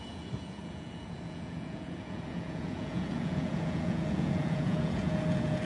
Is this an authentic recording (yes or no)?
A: no